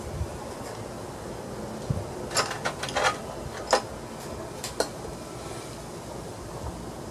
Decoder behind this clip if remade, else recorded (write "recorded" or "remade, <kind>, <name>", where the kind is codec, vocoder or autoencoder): recorded